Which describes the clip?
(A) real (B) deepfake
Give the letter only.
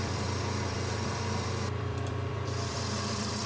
B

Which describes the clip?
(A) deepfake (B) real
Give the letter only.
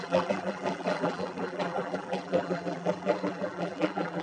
A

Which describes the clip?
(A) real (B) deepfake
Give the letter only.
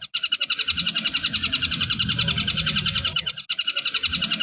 A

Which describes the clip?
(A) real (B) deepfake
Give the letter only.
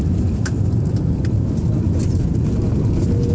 A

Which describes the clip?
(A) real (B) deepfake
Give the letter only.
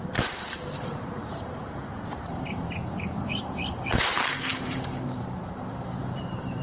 B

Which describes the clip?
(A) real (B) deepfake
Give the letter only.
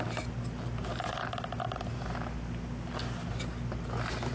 A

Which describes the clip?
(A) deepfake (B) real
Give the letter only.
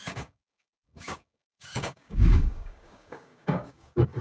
A